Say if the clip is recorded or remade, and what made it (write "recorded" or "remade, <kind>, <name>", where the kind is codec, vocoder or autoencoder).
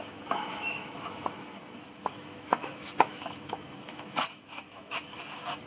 remade, autoencoder, DAC-VAE